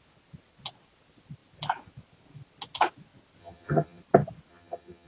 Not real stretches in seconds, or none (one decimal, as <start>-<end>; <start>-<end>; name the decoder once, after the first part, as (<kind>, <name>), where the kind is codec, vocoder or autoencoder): 3.4-4.0 (vocoder, HiFi-GAN); 4.5-5.1